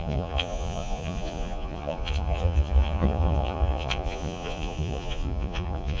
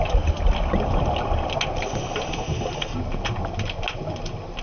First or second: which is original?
second